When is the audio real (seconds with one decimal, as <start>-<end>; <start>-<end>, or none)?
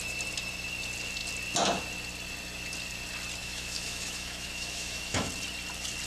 0.0-3.4; 5.3-6.1